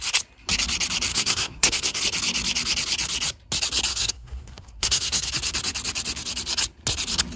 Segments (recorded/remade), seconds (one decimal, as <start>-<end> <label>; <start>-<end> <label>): 0.0-1.1 recorded; 1.1-2.0 remade; 2.0-3.9 recorded; 3.9-5.3 remade; 5.3-7.4 recorded